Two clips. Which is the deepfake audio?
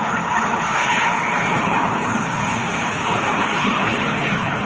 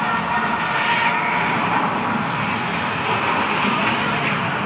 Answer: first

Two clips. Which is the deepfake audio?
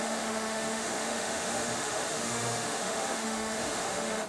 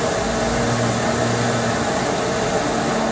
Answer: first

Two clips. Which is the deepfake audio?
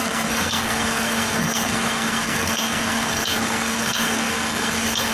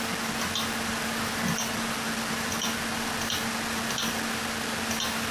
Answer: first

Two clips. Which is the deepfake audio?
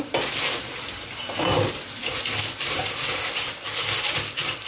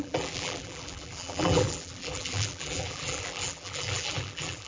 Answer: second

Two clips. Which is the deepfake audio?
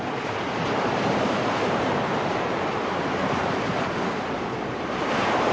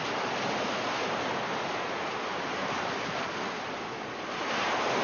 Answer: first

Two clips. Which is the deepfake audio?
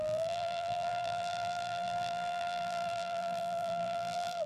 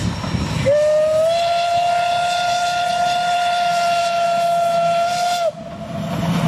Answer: first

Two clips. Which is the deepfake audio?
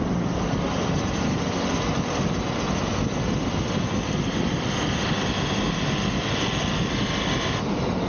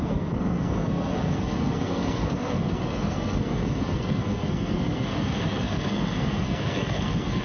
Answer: second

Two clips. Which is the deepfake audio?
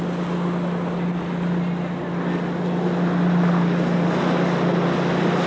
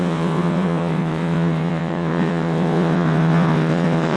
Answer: second